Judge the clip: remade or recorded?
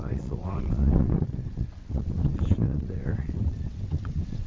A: remade